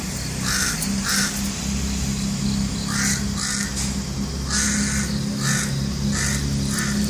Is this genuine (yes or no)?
yes